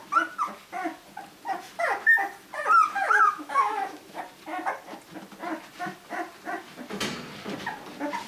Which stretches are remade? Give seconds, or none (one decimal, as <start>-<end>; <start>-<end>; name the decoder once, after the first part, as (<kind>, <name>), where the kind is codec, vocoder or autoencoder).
3.0-4.2 (autoencoder, DAC-VAE)